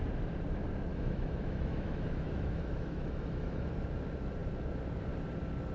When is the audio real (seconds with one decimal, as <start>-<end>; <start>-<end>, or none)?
0.0-0.9; 3.7-5.7